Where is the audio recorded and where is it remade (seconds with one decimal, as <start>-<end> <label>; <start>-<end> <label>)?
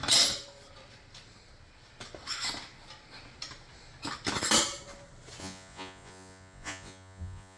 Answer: 0.0-5.4 recorded; 5.4-7.6 remade